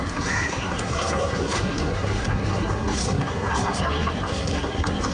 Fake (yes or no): yes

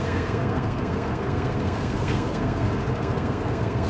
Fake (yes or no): yes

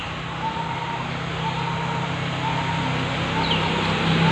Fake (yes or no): no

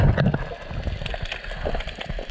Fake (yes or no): no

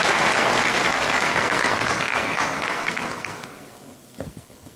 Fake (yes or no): yes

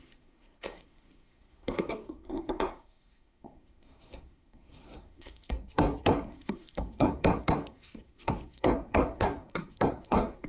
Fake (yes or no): yes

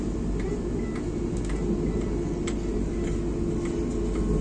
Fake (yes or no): no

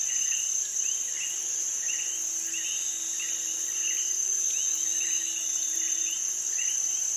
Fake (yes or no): no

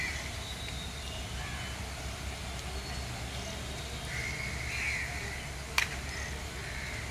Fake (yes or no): no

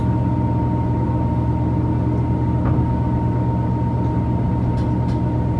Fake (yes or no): no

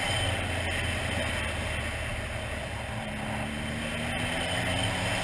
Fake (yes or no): no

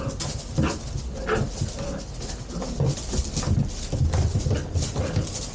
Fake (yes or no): no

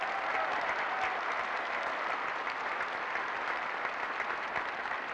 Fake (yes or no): no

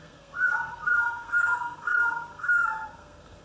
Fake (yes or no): yes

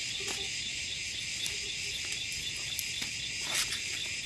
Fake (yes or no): no